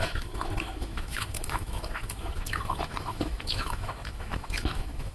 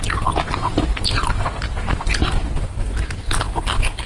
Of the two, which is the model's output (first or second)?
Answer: first